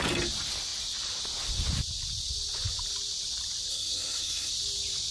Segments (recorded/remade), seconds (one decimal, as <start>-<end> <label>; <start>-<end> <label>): 0.0-3.7 recorded; 3.7-4.5 remade; 4.5-5.1 recorded